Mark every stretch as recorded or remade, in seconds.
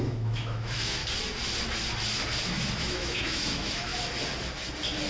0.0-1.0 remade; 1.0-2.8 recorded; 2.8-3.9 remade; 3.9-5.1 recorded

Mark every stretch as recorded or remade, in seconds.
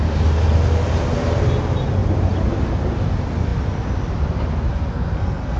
0.0-4.7 recorded; 4.7-5.6 remade